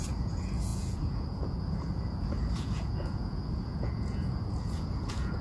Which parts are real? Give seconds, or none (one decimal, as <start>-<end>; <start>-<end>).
none